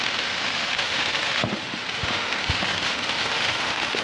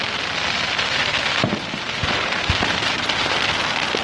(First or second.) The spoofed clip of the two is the first